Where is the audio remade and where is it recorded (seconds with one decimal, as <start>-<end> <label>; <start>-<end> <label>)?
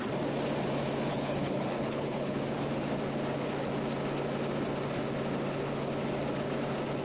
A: 0.0-1.1 recorded; 1.1-2.4 remade; 2.4-7.0 recorded